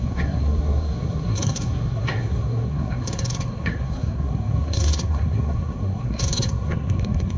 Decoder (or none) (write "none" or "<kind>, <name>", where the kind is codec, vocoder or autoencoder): codec, SNAC